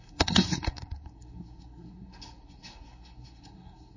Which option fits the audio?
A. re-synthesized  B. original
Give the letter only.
A